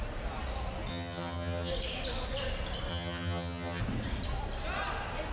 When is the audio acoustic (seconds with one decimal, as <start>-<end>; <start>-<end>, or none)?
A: 0.0-0.9; 1.7-2.9; 3.8-5.3